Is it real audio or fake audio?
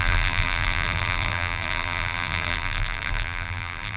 fake